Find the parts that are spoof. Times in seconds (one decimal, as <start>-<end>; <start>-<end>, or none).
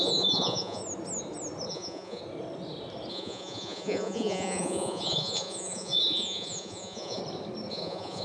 0.0-0.8; 1.7-2.2; 3.1-7.2; 7.7-8.2